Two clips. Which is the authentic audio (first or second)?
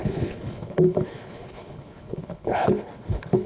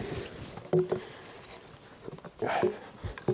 second